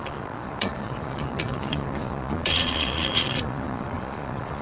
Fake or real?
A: fake